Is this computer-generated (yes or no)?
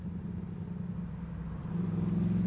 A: no